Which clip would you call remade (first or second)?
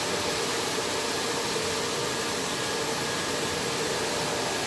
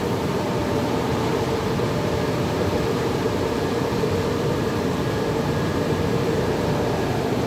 second